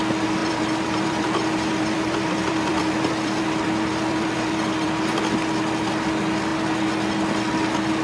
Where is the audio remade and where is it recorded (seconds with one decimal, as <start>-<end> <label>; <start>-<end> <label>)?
0.0-0.4 recorded; 0.4-5.2 remade; 5.2-8.0 recorded